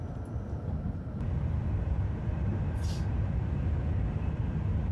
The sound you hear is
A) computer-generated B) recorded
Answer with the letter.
B